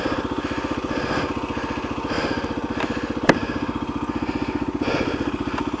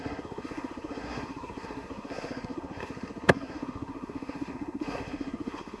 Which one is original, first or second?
first